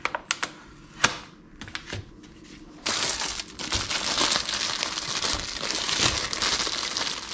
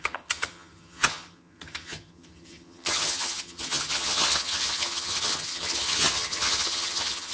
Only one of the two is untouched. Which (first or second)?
first